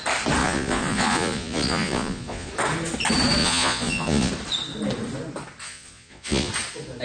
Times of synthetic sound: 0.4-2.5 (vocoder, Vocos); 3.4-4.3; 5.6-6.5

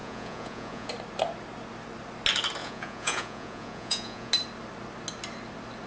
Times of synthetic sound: 0.0-0.9 (vocoder, Vocos); 2.6-4.3

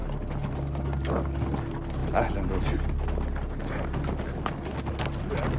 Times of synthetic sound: none